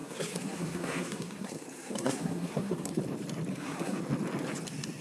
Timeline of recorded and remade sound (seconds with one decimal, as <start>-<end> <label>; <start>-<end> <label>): 0.0-3.0 remade; 3.0-3.5 recorded; 3.5-4.0 remade; 4.0-5.0 recorded